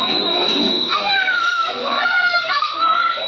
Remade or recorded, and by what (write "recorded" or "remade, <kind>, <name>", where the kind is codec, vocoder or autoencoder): remade, codec, SNAC